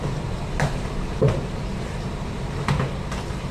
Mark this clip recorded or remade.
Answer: remade